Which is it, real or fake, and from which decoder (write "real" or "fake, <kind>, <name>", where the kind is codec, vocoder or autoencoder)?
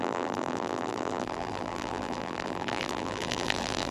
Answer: fake, vocoder, BigVGAN v2